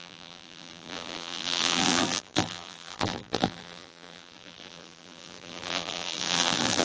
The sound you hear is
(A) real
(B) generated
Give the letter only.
B